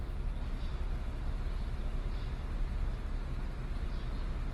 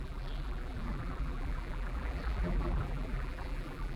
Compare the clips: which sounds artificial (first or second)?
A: second